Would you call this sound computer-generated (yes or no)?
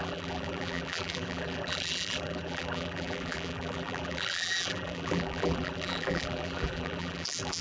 yes